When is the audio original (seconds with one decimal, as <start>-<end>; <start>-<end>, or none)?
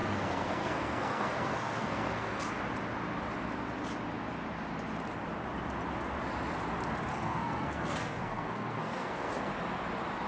2.6-7.1; 9.5-10.3